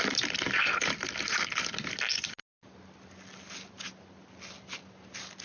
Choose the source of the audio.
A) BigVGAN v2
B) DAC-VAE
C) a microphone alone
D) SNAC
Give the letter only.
C